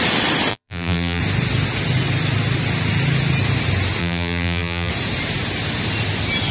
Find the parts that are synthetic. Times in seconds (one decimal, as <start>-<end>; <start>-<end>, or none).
0.5-1.2; 4.0-4.9